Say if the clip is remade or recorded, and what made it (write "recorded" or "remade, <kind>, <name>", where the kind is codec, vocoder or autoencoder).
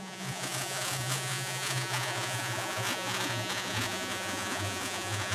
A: remade, vocoder, Vocos